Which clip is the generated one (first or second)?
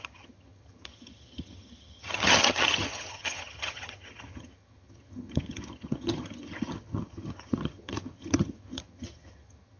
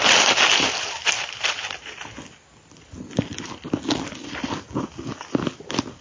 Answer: first